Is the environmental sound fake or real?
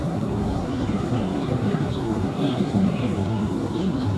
fake